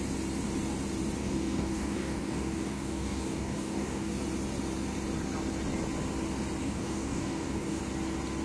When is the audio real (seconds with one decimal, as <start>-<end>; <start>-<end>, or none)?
0.0-1.2; 4.1-6.6; 7.8-8.4